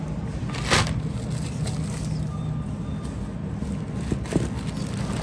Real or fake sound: real